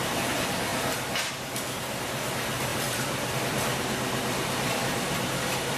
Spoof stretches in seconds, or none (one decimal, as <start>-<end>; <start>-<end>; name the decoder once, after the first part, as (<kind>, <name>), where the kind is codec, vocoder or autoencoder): none